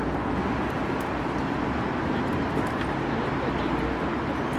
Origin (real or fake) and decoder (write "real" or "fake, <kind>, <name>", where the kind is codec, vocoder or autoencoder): real